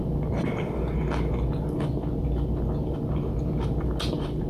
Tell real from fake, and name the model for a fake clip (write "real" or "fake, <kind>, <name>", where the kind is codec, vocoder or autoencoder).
real